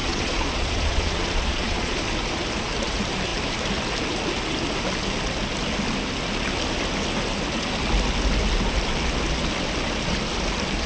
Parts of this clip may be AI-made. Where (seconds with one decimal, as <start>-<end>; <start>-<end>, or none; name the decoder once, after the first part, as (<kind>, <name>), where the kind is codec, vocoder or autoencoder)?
0.0-2.0 (vocoder, Vocos)